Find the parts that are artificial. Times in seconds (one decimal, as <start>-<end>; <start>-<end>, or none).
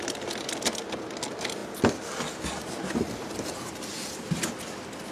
none